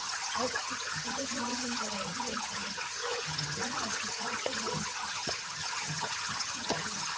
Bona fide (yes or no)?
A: no